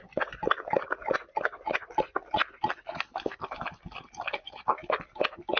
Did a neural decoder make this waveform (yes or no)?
no